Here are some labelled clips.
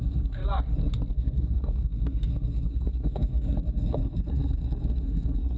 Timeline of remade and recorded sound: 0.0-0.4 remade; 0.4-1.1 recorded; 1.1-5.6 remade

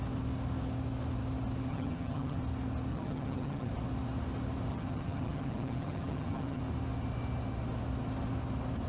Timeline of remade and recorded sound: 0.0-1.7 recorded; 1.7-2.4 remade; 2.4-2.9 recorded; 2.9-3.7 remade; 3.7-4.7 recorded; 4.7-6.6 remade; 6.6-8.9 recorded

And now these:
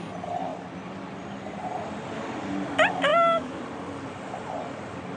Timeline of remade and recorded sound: 0.0-3.1 recorded; 3.1-3.6 remade; 3.6-5.2 recorded

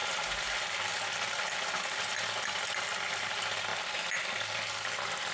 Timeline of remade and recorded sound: 0.0-5.3 recorded

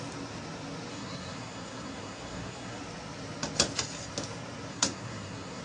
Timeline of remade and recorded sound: 0.0-0.9 recorded; 0.9-2.8 remade; 2.8-4.7 recorded; 4.7-5.6 remade

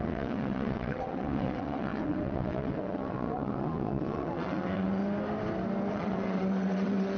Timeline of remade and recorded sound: 0.0-5.0 remade; 5.0-5.9 recorded; 5.9-7.2 remade

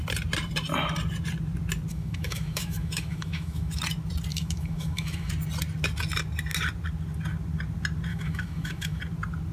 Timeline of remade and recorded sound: 0.0-1.9 recorded; 1.9-3.8 remade; 3.8-4.3 recorded; 4.3-5.3 remade; 5.3-8.1 recorded; 8.1-9.0 remade; 9.0-9.5 recorded